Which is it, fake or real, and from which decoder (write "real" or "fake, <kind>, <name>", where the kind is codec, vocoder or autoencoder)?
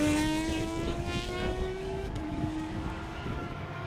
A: fake, codec, DAC